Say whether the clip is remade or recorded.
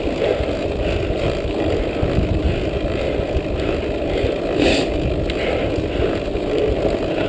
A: recorded